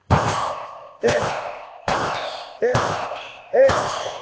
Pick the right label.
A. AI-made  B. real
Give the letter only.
A